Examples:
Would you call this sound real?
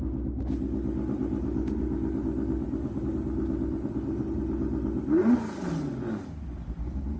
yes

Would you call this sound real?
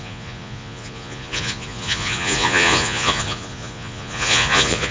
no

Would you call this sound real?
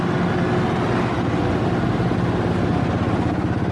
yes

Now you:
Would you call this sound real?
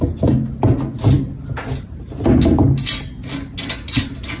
yes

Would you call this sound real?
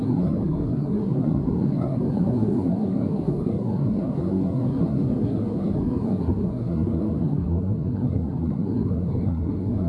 no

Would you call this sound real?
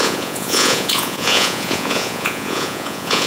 no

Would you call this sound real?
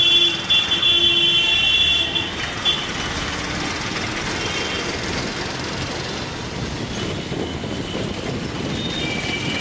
yes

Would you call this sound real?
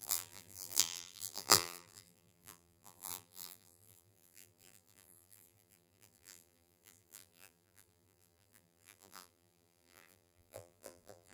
no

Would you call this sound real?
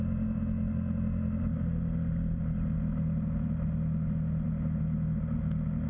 yes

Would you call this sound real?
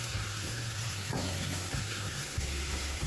no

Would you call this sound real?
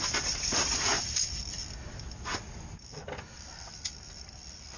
yes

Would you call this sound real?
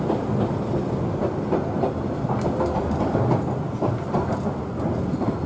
yes